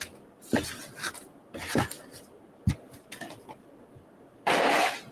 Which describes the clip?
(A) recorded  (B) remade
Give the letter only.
A